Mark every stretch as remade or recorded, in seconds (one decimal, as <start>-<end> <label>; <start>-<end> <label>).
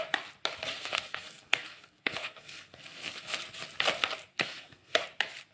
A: 0.0-0.7 recorded; 0.7-3.4 remade; 3.4-4.3 recorded; 4.3-5.0 remade; 5.0-5.5 recorded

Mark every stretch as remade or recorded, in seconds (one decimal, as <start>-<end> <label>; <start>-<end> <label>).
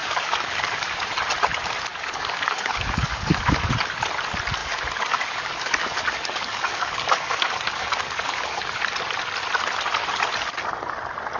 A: 0.0-1.1 remade; 1.1-1.9 recorded; 1.9-3.7 remade; 3.7-4.6 recorded; 4.6-8.8 remade; 8.8-11.4 recorded